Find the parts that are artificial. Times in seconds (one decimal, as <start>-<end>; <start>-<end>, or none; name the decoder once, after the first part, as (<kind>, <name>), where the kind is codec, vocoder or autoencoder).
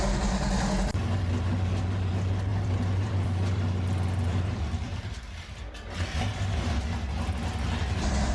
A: 2.5-6.7 (vocoder, BigVGAN v2)